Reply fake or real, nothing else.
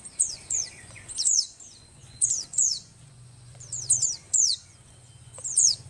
fake